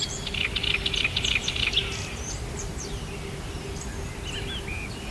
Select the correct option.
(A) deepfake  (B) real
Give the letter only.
B